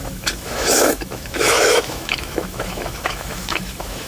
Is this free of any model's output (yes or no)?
no